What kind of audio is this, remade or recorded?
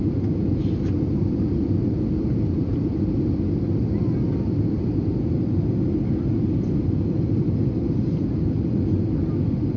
recorded